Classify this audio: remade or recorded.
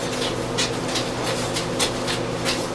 recorded